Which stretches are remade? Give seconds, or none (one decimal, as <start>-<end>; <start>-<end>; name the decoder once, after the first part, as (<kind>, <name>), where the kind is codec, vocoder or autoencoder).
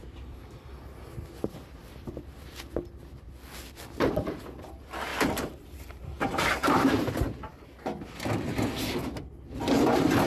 5.1-7.1 (vocoder, BigVGAN v2)